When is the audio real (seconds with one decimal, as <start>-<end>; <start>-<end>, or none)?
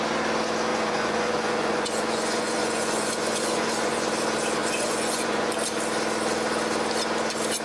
0.0-0.7; 4.1-4.6; 5.5-7.6